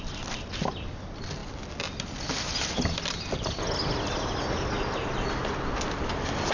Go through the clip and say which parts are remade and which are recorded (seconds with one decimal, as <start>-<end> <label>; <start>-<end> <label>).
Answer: 0.0-6.5 recorded